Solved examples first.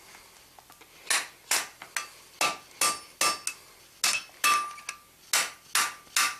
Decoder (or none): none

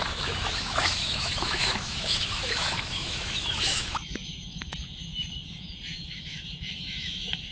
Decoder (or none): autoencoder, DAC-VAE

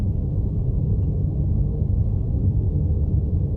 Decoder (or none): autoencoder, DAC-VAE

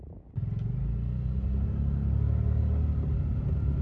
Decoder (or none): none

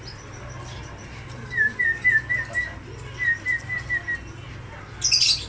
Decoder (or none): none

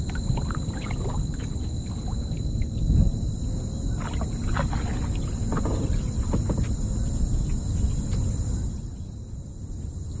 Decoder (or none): none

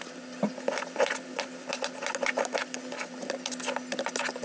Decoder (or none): none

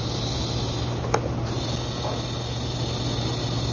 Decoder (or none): none